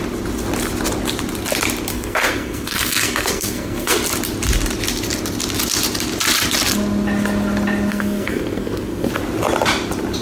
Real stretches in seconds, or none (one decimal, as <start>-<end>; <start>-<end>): 0.0-1.9; 4.0-7.9; 9.1-10.2